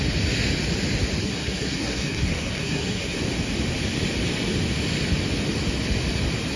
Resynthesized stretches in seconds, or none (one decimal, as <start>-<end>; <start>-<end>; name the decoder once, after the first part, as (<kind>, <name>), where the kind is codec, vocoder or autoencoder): 1.2-3.2 (codec, SNAC)